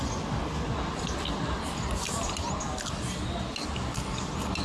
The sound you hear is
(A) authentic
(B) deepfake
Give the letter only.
A